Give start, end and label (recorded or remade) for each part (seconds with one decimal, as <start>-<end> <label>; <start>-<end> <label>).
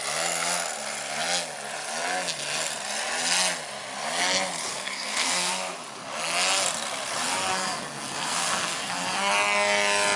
0.0-4.7 recorded; 4.7-5.5 remade; 5.5-7.5 recorded; 7.5-9.3 remade; 9.3-10.2 recorded